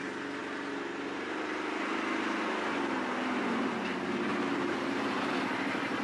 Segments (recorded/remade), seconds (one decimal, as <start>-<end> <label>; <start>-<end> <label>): 0.0-4.3 recorded; 4.3-5.3 remade; 5.3-6.0 recorded